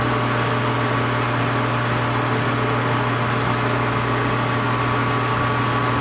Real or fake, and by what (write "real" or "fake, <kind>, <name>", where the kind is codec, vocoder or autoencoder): real